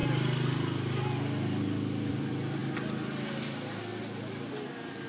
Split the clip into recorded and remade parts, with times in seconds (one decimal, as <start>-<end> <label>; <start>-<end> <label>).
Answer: 0.0-2.1 recorded; 2.1-2.6 remade; 2.6-5.1 recorded